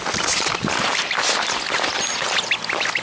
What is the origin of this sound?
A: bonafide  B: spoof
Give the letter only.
A